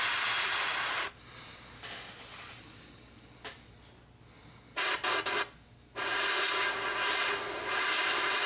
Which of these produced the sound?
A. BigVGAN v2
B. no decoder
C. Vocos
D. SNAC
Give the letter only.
B